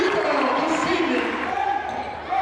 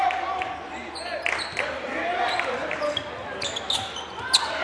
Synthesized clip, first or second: first